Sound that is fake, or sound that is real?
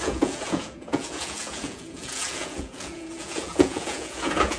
fake